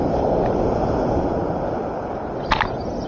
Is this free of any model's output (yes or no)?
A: yes